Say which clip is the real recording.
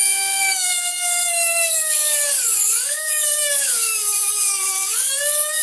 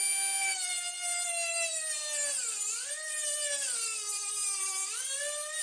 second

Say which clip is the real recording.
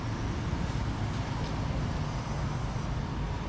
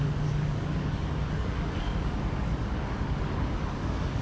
first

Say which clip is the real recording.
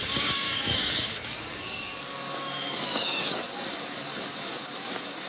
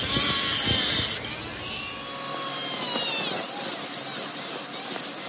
second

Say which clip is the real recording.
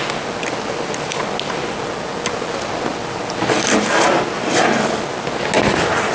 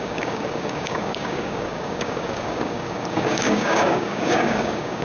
first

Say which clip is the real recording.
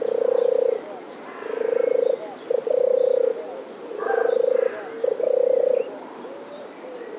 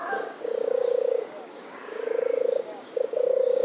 first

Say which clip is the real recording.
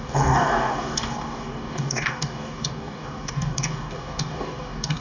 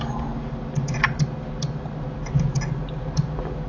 second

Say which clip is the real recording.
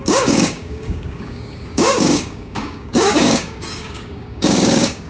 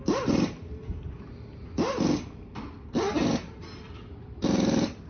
second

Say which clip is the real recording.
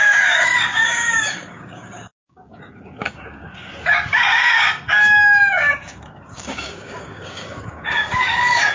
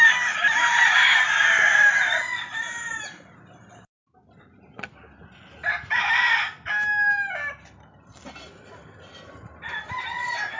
second